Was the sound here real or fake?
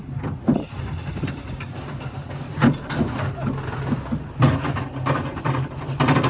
real